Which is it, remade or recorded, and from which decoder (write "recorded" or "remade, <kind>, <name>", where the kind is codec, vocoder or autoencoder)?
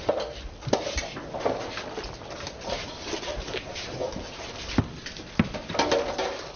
recorded